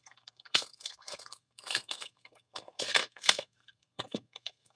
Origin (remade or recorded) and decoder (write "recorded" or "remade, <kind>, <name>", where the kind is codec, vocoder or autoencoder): remade, codec, SNAC